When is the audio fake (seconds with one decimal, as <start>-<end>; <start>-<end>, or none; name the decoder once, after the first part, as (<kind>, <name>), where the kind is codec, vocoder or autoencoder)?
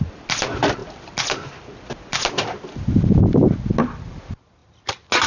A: none